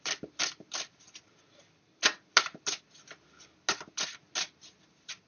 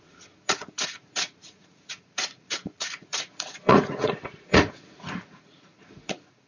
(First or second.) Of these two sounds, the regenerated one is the second